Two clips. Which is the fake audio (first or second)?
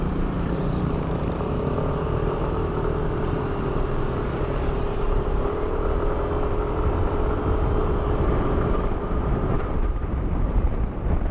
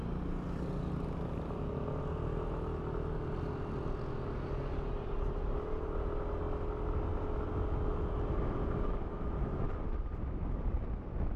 first